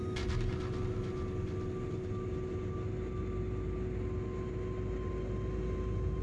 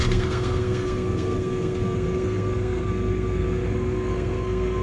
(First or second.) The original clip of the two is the first